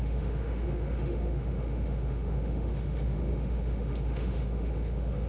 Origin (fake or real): fake